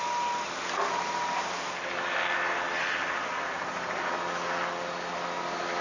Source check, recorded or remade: recorded